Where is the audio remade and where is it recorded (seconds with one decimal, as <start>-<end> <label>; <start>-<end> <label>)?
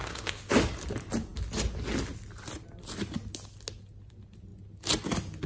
0.0-0.5 remade; 0.5-5.5 recorded